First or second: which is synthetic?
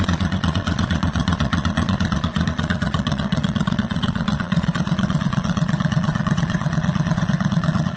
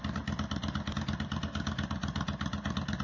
first